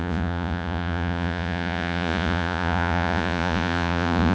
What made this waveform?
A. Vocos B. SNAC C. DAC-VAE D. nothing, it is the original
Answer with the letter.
A